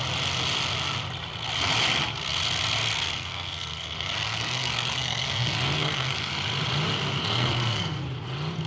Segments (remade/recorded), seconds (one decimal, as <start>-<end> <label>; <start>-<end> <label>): 0.0-2.8 recorded; 2.8-6.3 remade; 6.3-7.2 recorded; 7.2-8.0 remade; 8.0-8.7 recorded